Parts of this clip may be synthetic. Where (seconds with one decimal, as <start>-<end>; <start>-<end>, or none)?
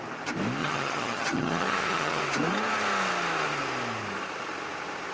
0.6-2.2